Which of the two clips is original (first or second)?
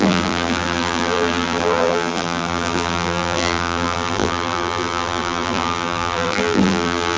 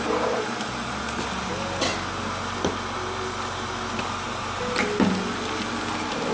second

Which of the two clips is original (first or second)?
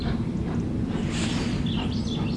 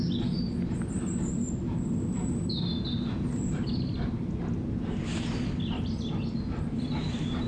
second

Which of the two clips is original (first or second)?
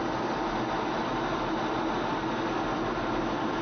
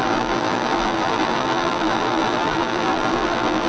first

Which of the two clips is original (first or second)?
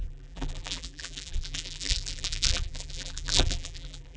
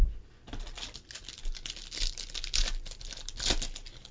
second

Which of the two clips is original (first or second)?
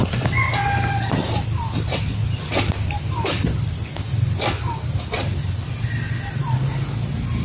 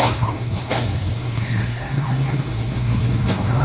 first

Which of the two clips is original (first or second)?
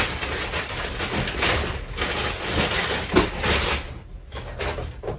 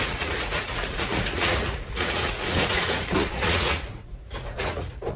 first